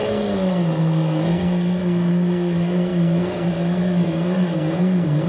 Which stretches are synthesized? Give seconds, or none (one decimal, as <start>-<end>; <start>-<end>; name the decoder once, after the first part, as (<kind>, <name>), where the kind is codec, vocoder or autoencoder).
0.0-5.3 (codec, SNAC)